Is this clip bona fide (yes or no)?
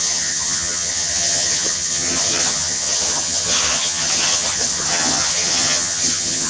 no